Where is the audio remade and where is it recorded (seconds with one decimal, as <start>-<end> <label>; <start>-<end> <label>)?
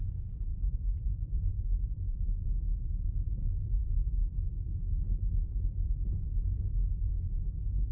0.0-7.9 remade